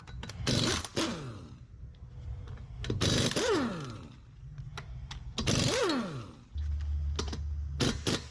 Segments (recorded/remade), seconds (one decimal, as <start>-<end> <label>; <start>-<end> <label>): 0.0-8.3 recorded